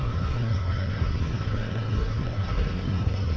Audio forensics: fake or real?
fake